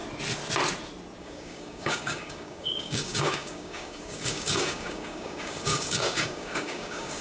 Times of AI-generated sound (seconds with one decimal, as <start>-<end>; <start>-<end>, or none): 1.2-7.2